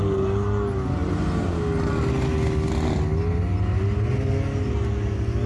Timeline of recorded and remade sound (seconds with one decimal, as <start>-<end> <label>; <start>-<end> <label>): 0.0-5.5 recorded

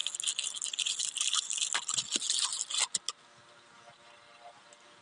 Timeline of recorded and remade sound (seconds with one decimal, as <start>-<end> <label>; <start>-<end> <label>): 0.0-5.0 recorded